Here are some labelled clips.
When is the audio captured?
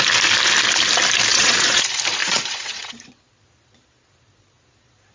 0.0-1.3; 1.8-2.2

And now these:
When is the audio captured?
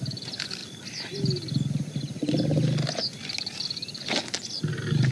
0.0-5.1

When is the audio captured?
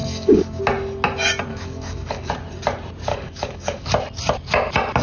0.6-1.5; 2.3-3.1; 3.9-5.0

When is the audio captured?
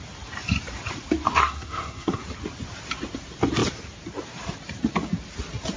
0.0-1.3; 2.2-5.8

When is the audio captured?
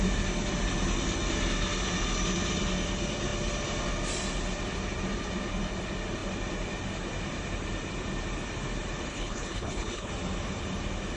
0.0-9.1; 10.1-11.2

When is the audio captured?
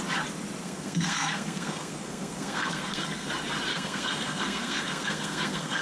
0.0-0.6; 3.3-3.7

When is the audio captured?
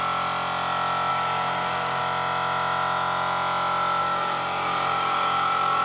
0.0-1.1; 2.0-4.0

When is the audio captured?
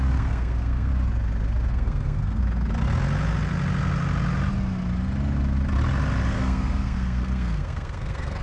0.9-1.7; 2.4-6.3